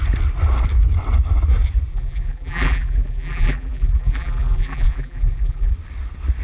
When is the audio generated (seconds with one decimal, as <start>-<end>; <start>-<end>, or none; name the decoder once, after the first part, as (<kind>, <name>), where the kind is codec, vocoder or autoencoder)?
1.9-5.7 (vocoder, BigVGAN v2)